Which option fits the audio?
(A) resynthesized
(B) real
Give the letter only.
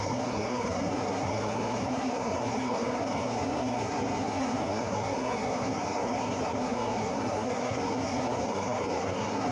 A